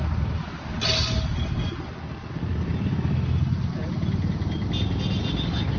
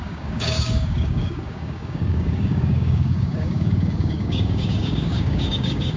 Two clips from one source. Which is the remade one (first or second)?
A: second